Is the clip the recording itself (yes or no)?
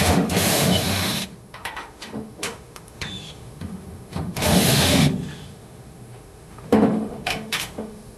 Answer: no